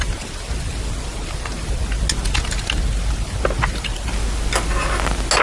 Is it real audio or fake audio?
real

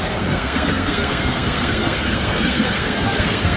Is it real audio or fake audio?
fake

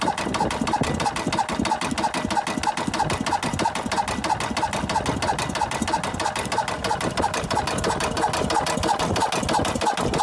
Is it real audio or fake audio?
real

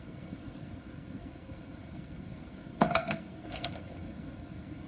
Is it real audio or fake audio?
fake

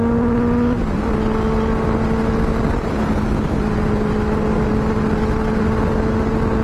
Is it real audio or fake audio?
real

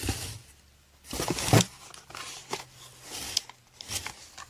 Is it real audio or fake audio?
real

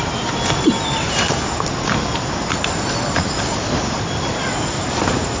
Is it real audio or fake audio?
real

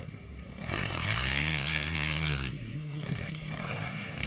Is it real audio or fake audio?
fake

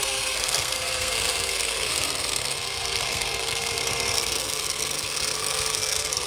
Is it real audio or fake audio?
fake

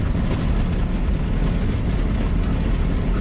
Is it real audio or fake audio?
real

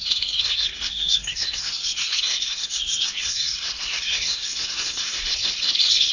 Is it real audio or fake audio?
fake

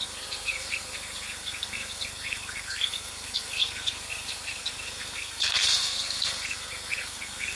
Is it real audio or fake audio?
fake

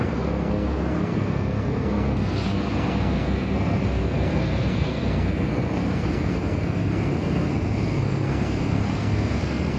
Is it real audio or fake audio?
fake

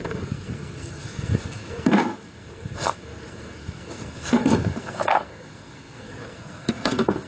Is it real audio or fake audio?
fake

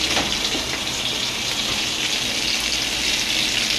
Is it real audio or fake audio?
real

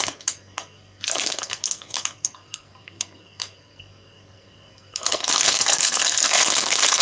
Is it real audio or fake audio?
fake